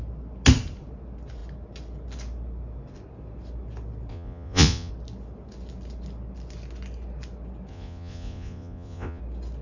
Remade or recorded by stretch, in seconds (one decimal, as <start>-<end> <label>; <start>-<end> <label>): 0.0-4.1 recorded; 4.1-4.9 remade; 4.9-7.7 recorded; 7.7-9.2 remade; 9.2-9.6 recorded